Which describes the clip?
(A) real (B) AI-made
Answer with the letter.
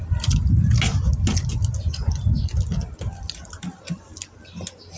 A